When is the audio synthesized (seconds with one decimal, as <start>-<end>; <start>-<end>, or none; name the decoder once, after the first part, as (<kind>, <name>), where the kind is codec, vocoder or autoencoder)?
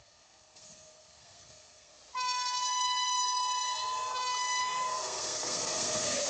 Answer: 0.0-1.9 (codec, SNAC); 4.6-6.3